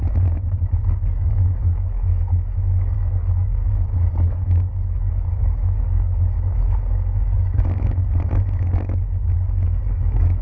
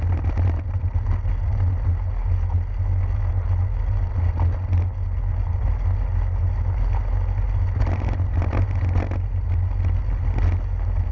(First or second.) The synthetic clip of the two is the first